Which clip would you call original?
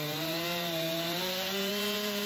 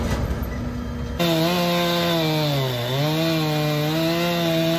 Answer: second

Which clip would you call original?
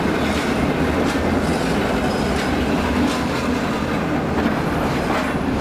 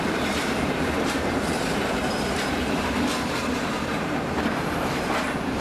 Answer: first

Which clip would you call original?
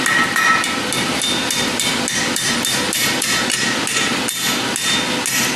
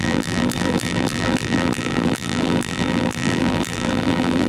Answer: first